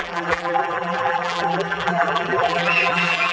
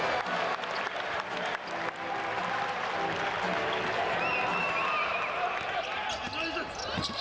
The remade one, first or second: first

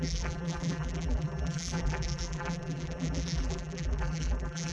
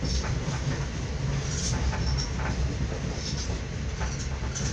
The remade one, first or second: first